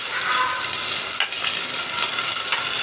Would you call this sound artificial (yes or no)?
no